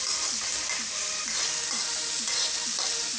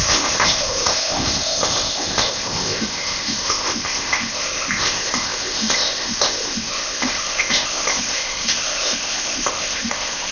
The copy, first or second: second